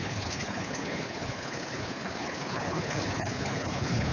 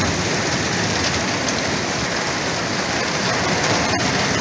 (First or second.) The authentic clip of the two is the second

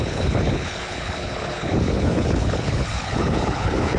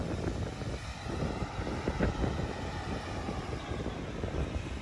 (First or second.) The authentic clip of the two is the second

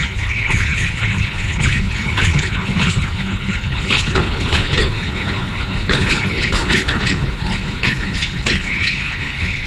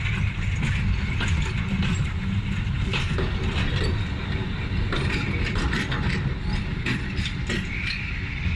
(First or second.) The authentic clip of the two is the second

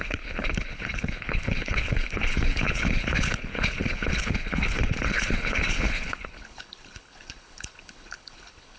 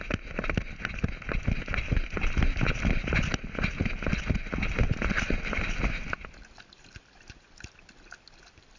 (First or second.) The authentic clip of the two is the second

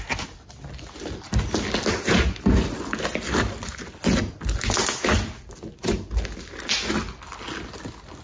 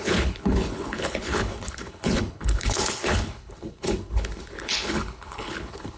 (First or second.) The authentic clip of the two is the first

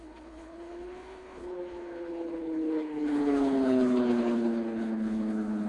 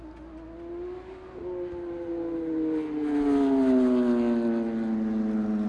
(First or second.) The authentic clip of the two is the second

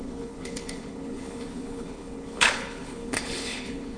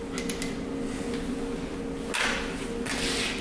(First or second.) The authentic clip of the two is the second